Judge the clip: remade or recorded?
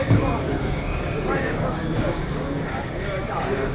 remade